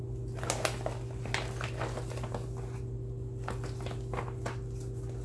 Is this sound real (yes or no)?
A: yes